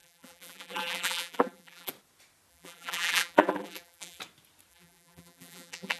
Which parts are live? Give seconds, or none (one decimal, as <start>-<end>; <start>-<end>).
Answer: 1.9-2.5; 4.2-4.7